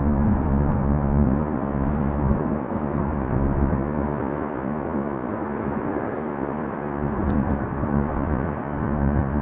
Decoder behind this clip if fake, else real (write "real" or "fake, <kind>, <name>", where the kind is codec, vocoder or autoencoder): fake, vocoder, Vocos